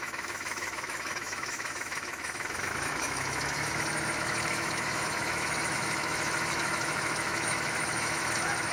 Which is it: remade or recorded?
remade